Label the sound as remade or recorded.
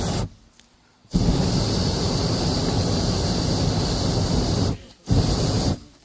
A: recorded